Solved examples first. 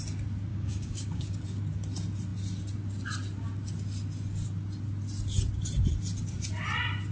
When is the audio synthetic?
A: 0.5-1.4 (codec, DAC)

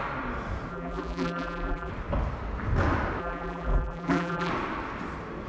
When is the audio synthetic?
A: 0.7-1.9 (vocoder, BigVGAN v2); 3.2-4.5